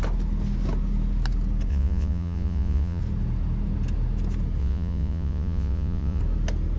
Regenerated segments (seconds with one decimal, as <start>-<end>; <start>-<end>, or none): 1.7-3.0; 4.6-6.2